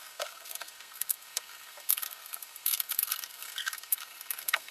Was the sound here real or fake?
fake